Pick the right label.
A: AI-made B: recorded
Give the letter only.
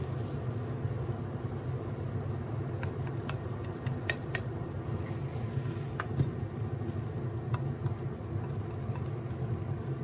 B